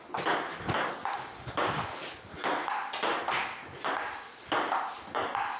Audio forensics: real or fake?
real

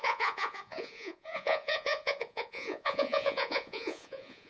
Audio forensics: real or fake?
fake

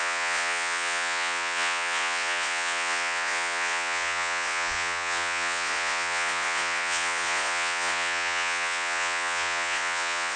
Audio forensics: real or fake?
fake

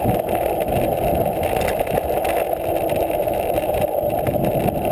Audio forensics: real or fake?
real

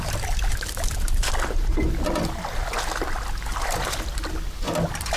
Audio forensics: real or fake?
real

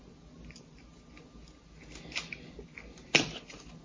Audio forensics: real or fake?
real